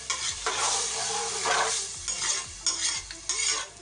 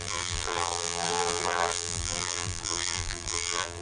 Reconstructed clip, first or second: second